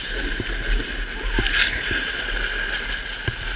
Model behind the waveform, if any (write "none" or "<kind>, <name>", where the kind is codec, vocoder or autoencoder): none